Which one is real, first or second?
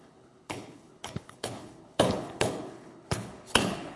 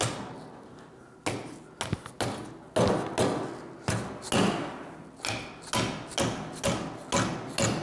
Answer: second